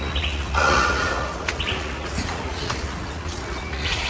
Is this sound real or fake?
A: fake